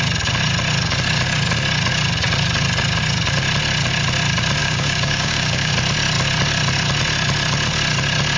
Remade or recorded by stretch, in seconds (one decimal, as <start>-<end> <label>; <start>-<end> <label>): 0.0-4.6 recorded; 4.6-5.7 remade; 5.7-8.4 recorded